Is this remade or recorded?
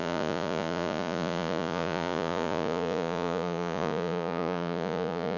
remade